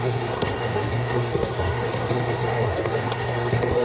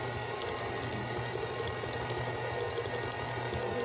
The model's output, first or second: first